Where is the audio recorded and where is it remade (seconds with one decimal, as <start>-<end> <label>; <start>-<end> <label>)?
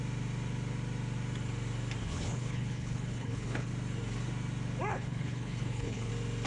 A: 0.0-2.0 recorded; 2.0-3.7 remade; 3.7-4.9 recorded; 4.9-6.1 remade; 6.1-6.5 recorded